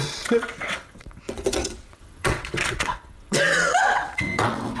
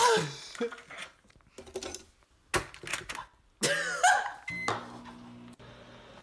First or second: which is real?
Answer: second